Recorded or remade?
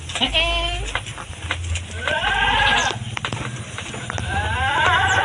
recorded